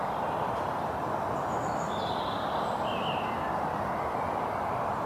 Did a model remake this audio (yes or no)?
no